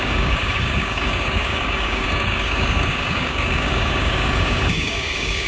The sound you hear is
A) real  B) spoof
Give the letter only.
B